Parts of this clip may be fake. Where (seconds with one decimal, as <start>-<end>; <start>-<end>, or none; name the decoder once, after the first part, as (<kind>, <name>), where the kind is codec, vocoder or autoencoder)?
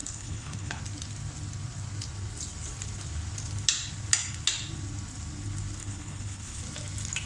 0.0-0.8 (codec, HILCodec); 5.8-6.6